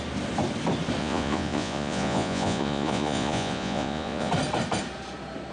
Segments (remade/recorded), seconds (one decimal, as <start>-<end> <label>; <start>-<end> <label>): 0.0-1.0 recorded; 1.0-4.3 remade; 4.3-5.5 recorded